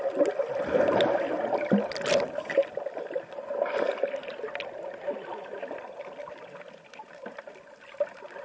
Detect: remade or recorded recorded